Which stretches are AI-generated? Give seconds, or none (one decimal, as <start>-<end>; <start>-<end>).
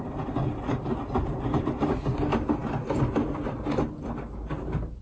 none